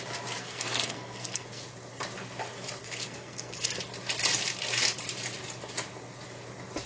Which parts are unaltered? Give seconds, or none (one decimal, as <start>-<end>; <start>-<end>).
0.0-0.4; 1.6-2.8; 3.8-6.9